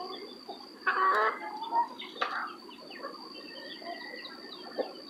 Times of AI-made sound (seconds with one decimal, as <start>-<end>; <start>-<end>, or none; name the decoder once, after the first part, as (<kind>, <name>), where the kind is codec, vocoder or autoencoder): 0.9-1.4 (autoencoder, DAC-VAE)

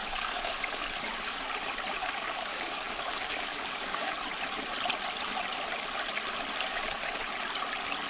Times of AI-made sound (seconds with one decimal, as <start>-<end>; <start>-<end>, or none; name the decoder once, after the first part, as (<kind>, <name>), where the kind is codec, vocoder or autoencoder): 0.0-0.8 (codec, DAC); 2.0-4.1; 6.7-7.2

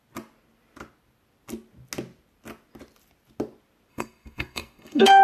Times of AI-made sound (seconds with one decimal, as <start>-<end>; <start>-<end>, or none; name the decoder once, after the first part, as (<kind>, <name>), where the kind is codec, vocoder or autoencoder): 3.9-5.2 (codec, SNAC)